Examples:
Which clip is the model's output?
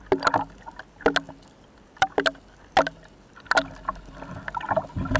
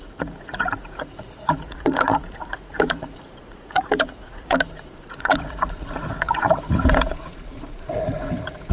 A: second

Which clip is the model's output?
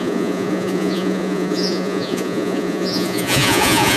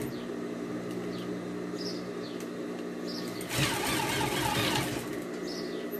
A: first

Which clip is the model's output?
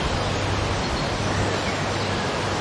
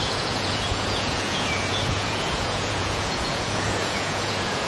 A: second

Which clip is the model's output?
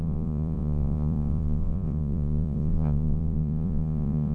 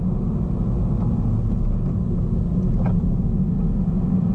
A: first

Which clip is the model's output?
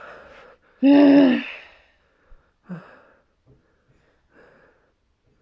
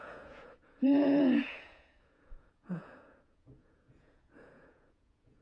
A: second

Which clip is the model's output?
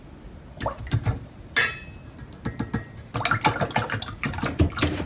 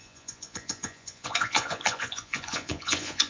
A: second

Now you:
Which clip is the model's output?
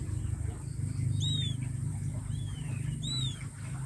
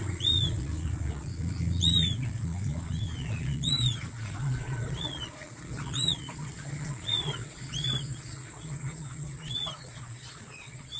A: second